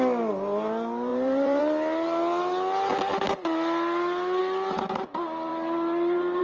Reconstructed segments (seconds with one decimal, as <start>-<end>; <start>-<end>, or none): 1.1-1.6; 5.5-6.4